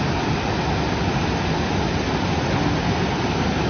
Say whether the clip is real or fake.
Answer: real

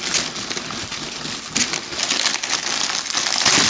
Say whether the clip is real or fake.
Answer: real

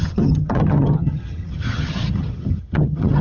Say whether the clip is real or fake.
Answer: fake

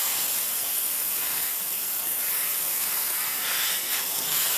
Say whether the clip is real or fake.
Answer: fake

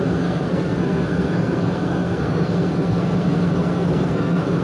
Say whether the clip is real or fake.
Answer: fake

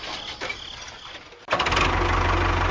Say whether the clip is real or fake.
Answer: real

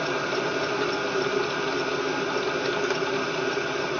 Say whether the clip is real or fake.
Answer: real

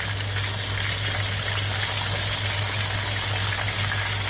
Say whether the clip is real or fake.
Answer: real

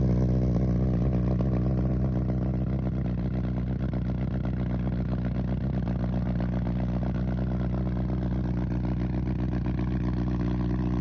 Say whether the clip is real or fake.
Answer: real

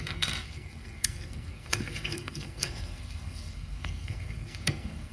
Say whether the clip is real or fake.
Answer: fake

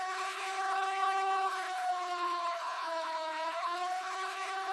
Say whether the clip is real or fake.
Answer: fake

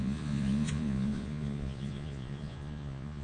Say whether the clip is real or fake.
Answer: fake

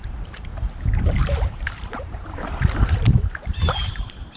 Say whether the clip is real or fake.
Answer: fake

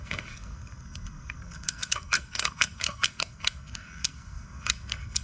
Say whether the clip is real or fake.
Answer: fake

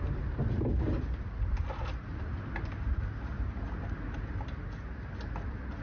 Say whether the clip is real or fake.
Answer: real